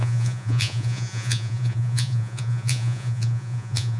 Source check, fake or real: fake